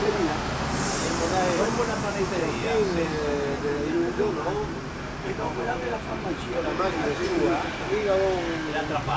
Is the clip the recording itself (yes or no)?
yes